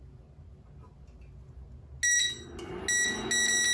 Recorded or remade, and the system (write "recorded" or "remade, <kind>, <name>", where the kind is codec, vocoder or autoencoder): recorded